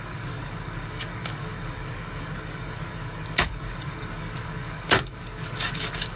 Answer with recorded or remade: remade